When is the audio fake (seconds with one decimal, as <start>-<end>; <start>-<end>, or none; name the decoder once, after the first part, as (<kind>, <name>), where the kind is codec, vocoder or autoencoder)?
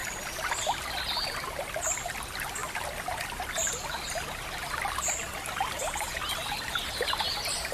none